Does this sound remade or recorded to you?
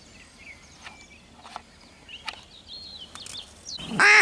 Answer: recorded